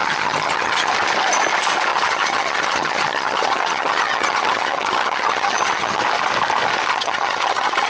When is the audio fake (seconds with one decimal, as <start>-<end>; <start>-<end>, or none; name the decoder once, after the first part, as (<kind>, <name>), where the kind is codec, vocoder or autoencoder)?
0.0-0.9 (vocoder, HiFi-GAN); 1.9-6.0; 6.9-7.9